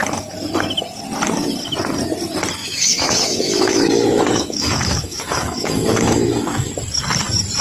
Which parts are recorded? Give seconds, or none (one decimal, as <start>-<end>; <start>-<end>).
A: 0.0-2.6; 6.7-7.6